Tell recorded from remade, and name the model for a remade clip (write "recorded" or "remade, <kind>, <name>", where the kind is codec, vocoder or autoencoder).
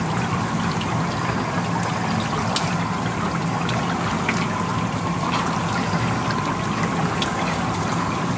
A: recorded